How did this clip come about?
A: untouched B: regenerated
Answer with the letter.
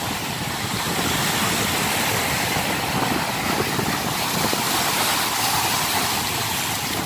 A